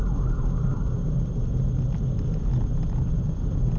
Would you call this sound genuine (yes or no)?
yes